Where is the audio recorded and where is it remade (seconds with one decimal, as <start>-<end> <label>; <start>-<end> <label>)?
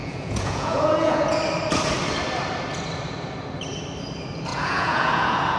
0.0-1.4 remade; 1.4-4.5 recorded; 4.5-5.6 remade